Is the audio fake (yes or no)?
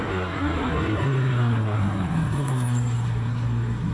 yes